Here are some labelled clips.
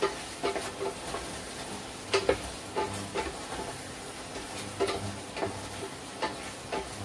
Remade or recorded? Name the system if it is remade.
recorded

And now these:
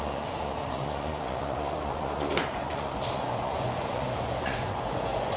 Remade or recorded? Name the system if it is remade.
remade, vocoder, Vocos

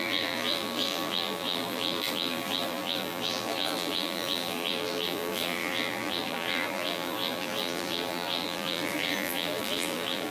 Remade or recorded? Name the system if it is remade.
remade, vocoder, BigVGAN v2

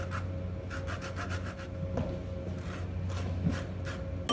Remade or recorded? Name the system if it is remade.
recorded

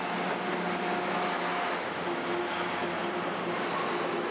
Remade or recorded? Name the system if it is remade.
recorded